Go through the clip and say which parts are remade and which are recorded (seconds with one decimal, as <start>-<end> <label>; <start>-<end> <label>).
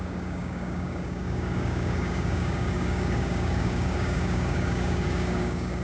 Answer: 0.0-5.8 remade